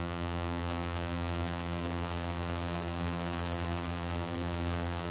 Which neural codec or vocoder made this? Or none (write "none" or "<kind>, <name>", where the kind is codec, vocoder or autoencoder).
vocoder, BigVGAN v2